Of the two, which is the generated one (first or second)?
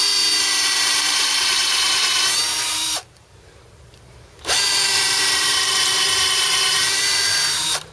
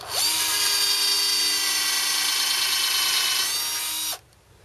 first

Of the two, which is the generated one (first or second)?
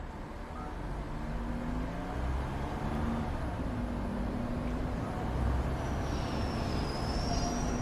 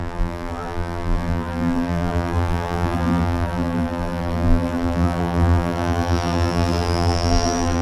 second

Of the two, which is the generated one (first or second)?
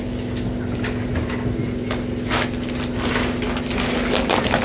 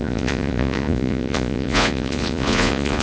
second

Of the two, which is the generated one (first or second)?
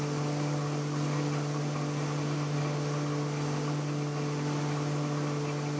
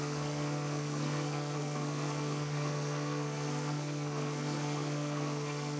second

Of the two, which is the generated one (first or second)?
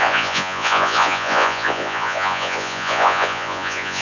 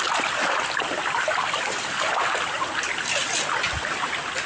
first